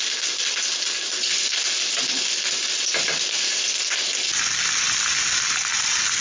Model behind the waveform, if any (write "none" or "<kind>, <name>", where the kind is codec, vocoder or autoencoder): none